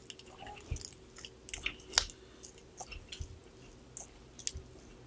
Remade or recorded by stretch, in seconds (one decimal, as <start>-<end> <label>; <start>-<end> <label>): 0.0-5.1 recorded